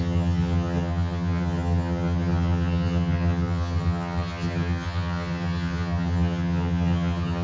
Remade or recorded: remade